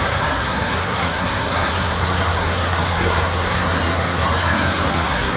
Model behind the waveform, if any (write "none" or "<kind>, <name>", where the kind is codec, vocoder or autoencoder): codec, SNAC